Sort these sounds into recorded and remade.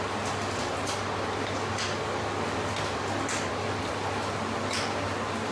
recorded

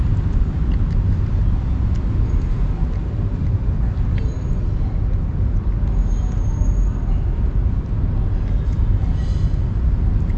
recorded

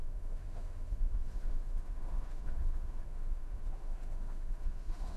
remade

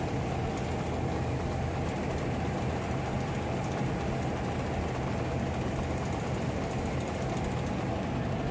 recorded